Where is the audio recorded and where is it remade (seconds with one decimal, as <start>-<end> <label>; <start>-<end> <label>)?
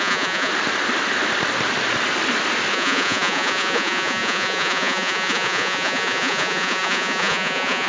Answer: 0.0-0.5 remade; 0.5-2.7 recorded; 2.7-7.9 remade